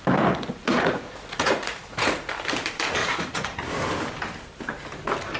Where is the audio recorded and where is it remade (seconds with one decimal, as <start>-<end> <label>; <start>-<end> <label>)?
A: 0.0-0.6 recorded; 0.6-2.3 remade; 2.3-3.0 recorded; 3.0-3.7 remade; 3.7-5.4 recorded